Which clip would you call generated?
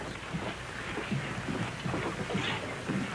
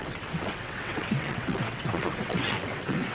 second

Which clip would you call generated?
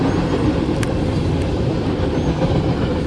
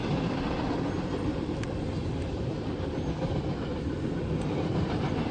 second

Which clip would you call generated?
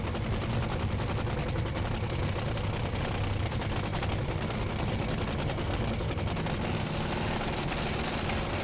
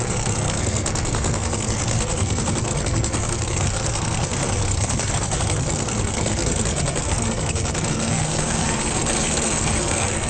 second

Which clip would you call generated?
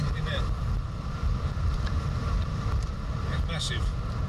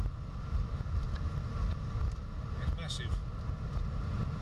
first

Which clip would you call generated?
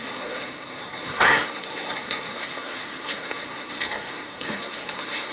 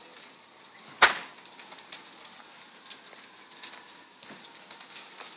first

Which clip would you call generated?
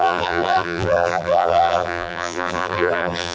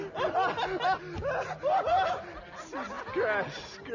first